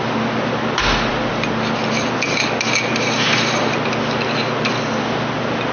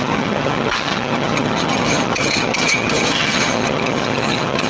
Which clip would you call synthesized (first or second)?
second